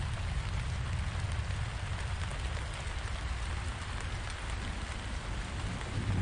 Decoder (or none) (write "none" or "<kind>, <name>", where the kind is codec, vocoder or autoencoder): none